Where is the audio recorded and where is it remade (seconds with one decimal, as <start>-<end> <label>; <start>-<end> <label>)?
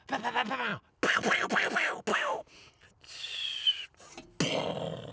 0.0-2.1 recorded; 2.1-2.7 remade; 2.7-5.1 recorded